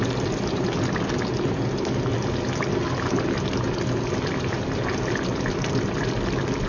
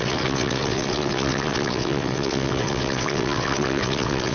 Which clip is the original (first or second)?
first